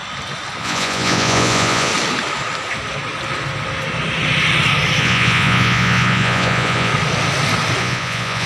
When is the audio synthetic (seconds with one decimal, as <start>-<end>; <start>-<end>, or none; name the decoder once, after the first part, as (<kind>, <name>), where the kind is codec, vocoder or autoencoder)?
0.6-1.9 (vocoder, Vocos); 5.0-6.9; 7.8-8.5